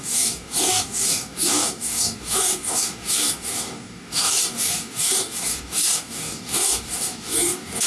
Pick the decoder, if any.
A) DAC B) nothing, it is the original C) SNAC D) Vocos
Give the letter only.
A